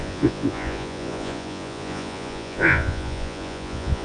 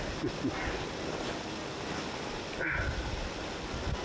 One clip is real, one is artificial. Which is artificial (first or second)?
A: first